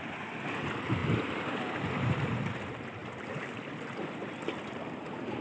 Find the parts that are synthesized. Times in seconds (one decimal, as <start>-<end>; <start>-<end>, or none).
none